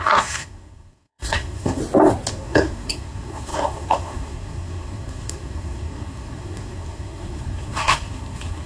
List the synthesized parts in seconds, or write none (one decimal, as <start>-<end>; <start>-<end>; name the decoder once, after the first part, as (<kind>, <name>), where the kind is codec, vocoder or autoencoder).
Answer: 0.0-1.8 (codec, SNAC); 2.3-8.7